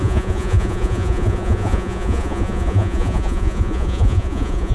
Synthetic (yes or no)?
yes